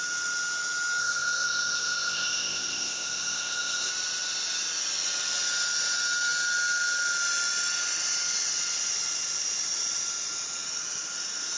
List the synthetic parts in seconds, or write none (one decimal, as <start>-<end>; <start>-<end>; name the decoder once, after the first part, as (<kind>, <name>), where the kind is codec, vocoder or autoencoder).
1.0-3.9 (codec, ZipCodec)